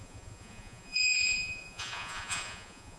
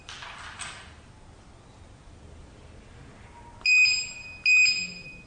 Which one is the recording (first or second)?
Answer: second